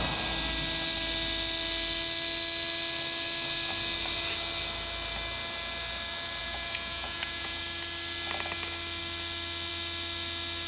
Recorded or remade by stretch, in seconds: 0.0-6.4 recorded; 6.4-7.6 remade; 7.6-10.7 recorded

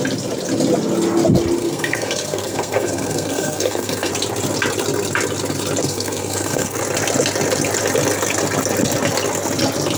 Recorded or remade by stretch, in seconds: 0.0-1.6 recorded; 1.6-4.1 remade; 4.1-5.8 recorded; 5.8-6.8 remade; 6.8-10.0 recorded

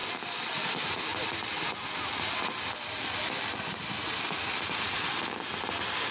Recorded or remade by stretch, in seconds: 0.0-6.1 recorded

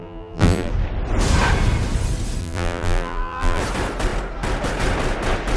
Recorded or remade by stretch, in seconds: 0.0-0.7 remade; 0.7-2.4 recorded; 2.4-3.6 remade; 3.6-5.6 recorded

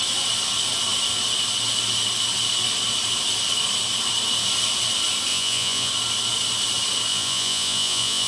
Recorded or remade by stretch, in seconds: 0.0-5.3 recorded; 5.3-5.9 remade; 5.9-7.1 recorded; 7.1-8.3 remade

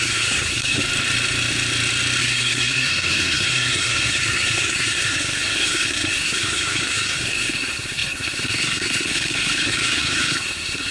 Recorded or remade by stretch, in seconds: 0.0-0.8 remade; 0.8-2.2 recorded; 2.2-10.9 remade

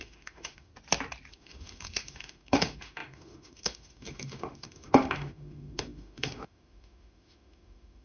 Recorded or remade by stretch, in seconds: 0.0-0.7 remade; 0.7-1.3 recorded; 1.3-8.0 remade

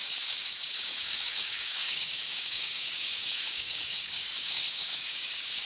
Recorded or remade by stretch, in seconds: 0.0-5.6 remade